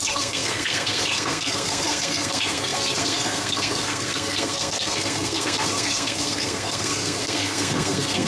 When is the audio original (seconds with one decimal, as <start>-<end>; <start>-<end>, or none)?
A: none